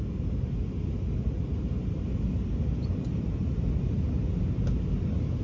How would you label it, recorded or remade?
recorded